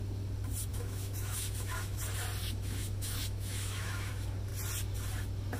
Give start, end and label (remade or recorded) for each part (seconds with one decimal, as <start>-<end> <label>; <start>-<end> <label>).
0.0-0.7 recorded; 0.7-2.0 remade; 2.0-2.4 recorded; 2.4-4.1 remade; 4.1-5.6 recorded

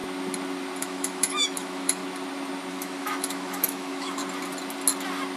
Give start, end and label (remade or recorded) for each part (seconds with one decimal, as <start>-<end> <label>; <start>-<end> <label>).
0.0-0.8 recorded; 0.8-2.0 remade; 2.0-2.7 recorded; 2.7-4.2 remade; 4.2-5.4 recorded

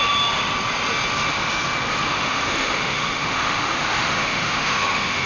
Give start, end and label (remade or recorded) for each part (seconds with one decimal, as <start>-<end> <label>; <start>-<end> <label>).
0.0-2.1 recorded; 2.1-5.3 remade

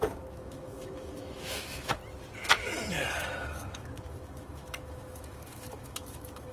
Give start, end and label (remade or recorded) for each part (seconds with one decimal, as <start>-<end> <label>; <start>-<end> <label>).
0.0-2.0 remade; 2.0-2.9 recorded; 2.9-6.5 remade

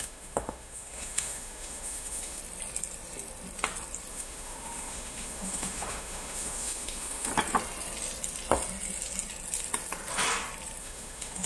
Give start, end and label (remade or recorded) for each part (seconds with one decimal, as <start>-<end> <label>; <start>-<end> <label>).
0.0-2.4 remade; 2.4-4.1 recorded; 4.1-7.3 remade; 7.3-10.8 recorded; 10.8-11.5 remade

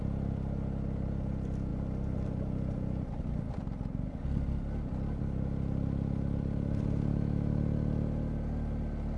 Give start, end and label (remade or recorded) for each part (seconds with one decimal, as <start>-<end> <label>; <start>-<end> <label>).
0.0-7.1 recorded; 7.1-7.6 remade; 7.6-9.2 recorded

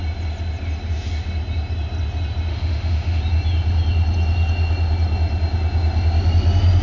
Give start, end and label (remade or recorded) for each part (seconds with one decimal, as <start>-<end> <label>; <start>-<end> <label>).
0.0-2.5 recorded; 2.5-3.2 remade; 3.2-6.8 recorded

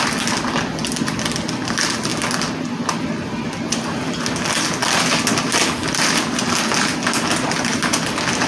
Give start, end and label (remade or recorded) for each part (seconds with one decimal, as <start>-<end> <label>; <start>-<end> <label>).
0.0-8.5 recorded